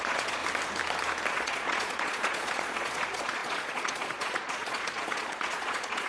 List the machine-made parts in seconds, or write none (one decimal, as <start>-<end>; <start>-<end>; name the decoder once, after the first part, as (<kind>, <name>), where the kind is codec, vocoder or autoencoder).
0.0-0.4 (vocoder, Vocos); 1.3-6.1